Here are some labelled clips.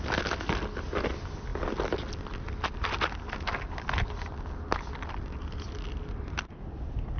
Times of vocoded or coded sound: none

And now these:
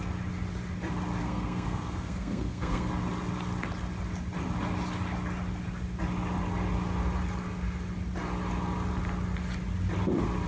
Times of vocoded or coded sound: 1.2-2.9 (codec, SNAC)

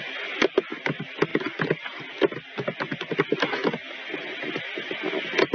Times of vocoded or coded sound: none

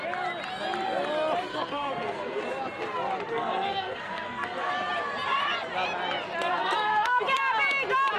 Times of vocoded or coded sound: 1.5-2.4 (codec, SNAC); 3.3-4.7; 6.5-7.2

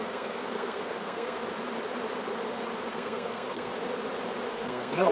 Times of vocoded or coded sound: 0.0-1.4 (codec, SNAC); 2.9-3.7; 4.5-5.1

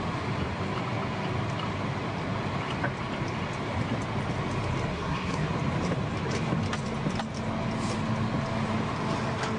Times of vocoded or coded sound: 4.9-5.5 (codec, SNAC)

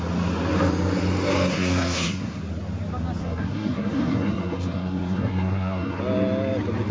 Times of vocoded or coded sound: 1.5-2.4 (codec, SNAC); 3.2-6.0

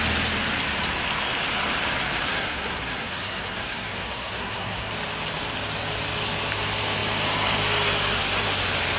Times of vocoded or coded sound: 2.3-4.9 (codec, SNAC)